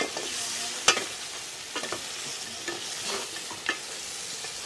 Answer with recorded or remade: recorded